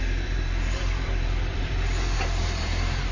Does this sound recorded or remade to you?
remade